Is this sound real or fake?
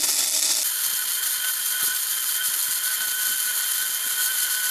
real